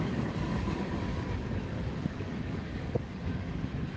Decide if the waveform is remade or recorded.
remade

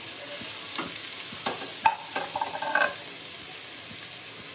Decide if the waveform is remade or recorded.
recorded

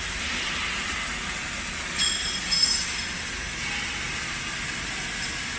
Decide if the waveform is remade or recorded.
recorded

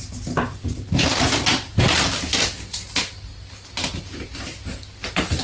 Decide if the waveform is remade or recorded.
recorded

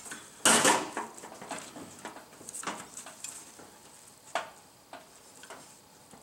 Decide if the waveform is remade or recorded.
recorded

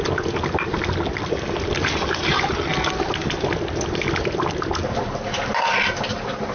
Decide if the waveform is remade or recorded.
recorded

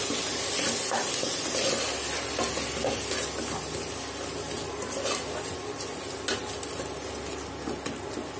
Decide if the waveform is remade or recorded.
recorded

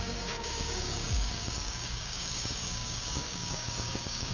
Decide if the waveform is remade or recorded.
remade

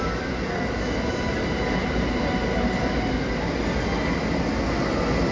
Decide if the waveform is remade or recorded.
recorded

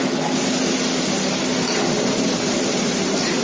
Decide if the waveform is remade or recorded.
recorded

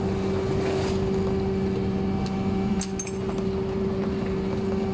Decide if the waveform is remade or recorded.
recorded